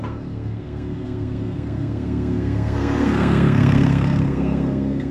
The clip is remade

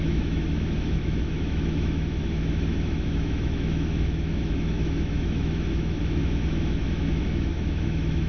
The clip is remade